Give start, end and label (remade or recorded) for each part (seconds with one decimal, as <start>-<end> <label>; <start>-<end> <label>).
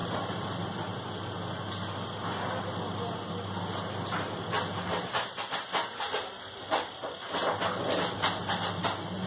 0.0-9.3 recorded